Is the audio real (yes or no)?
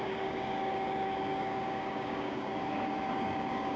no